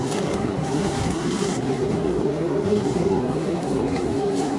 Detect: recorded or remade remade